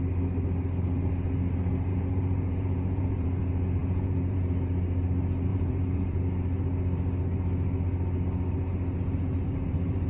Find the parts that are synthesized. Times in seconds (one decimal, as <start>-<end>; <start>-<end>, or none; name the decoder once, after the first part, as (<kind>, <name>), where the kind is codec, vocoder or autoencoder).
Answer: 1.9-3.4 (vocoder, Vocos); 3.8-4.4; 5.5-6.2